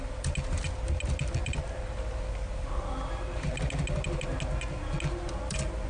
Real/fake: real